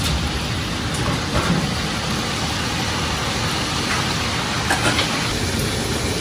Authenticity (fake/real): fake